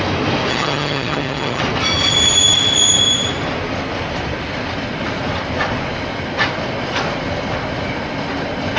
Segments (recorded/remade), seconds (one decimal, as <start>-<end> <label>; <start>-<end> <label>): 0.0-0.5 recorded; 0.5-1.6 remade; 1.6-8.8 recorded